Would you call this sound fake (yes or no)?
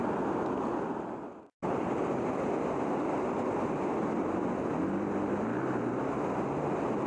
no